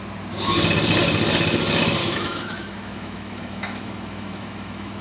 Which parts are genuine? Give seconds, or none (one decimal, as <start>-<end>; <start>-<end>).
0.0-2.0